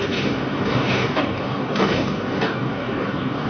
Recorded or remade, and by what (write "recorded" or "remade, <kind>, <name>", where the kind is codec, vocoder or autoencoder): remade, codec, DAC